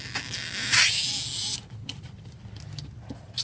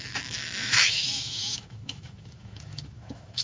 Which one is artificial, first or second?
second